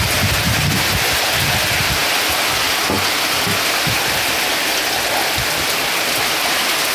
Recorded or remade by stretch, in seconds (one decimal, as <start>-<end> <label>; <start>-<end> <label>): 0.0-6.9 recorded